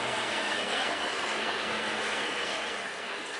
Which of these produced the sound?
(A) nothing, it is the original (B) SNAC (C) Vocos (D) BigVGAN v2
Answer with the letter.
B